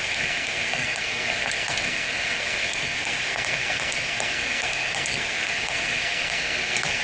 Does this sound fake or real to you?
fake